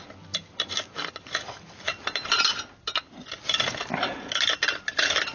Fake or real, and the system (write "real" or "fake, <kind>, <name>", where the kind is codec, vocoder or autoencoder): real